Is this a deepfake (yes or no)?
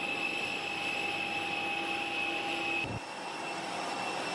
no